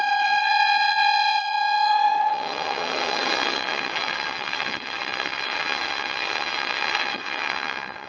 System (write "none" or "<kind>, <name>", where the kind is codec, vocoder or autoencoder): vocoder, WaveNeXt